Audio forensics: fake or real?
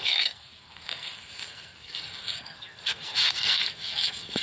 fake